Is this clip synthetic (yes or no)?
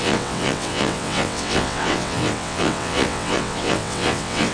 yes